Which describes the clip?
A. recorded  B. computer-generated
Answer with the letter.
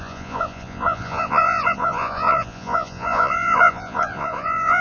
B